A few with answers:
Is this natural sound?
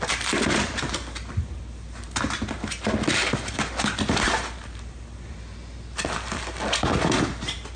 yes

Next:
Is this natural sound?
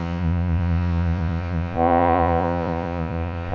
no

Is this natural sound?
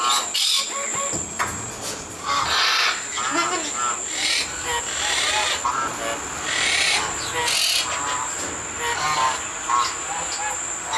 yes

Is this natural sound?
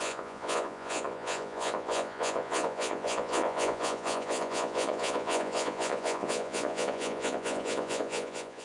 no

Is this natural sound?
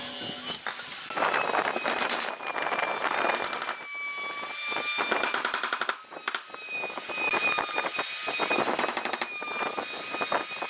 yes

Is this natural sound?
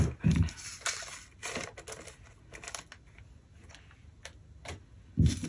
yes